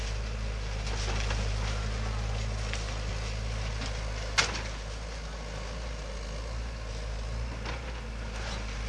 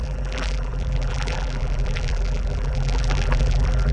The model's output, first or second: second